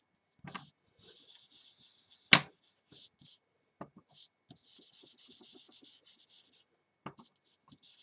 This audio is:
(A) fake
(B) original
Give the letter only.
B